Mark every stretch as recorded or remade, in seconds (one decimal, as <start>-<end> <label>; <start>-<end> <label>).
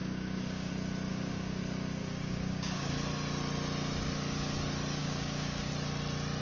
0.0-0.7 remade; 0.7-1.1 recorded; 1.1-1.6 remade; 1.6-2.0 recorded; 2.0-2.9 remade; 2.9-5.0 recorded; 5.0-5.7 remade; 5.7-6.4 recorded